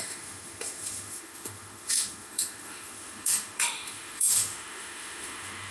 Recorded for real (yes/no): no